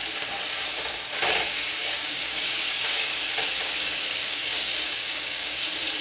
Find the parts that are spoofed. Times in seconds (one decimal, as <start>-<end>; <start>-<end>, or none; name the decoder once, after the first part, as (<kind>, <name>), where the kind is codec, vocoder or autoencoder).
1.8-3.2 (codec, DAC); 3.6-5.6